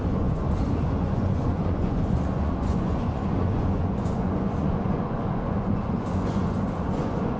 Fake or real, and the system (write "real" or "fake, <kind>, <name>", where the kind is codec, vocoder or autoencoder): fake, vocoder, Vocos